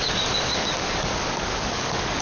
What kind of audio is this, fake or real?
fake